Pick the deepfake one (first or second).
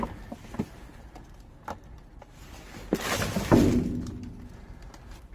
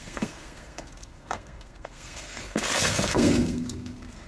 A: second